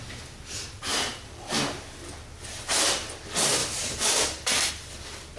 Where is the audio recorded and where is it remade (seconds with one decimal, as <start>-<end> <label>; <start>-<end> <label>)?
0.0-0.9 recorded; 0.9-1.6 remade; 1.6-3.6 recorded; 3.6-4.7 remade; 4.7-5.4 recorded